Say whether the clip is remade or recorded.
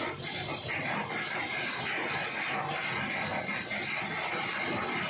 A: recorded